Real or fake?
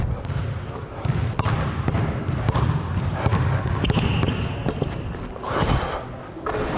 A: real